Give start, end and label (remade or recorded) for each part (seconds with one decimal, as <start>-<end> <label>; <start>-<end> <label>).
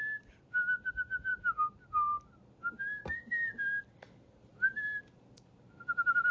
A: 0.0-0.9 recorded; 0.9-1.3 remade; 1.3-3.8 recorded; 3.8-4.5 remade; 4.5-5.8 recorded; 5.8-6.3 remade